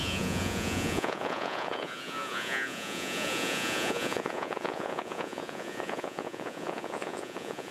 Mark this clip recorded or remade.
remade